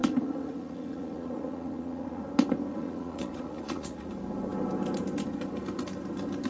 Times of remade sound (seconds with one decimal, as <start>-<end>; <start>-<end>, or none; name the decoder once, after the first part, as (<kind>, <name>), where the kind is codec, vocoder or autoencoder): 0.0-2.2 (vocoder, Vocos); 2.7-4.1